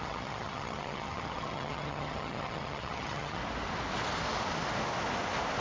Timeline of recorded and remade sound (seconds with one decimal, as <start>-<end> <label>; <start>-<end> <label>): 0.0-3.4 remade; 3.4-5.6 recorded